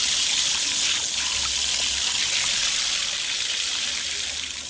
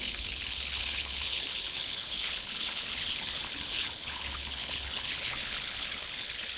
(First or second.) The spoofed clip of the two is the second